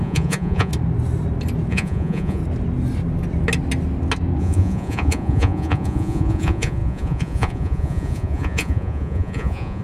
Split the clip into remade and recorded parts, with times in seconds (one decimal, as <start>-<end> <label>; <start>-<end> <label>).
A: 0.0-0.7 remade; 0.7-1.7 recorded; 1.7-2.4 remade; 2.4-4.4 recorded; 4.4-9.8 remade